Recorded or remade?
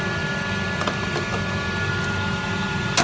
recorded